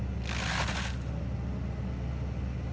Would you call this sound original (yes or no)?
yes